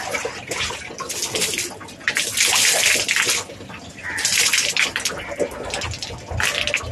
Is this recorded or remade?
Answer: recorded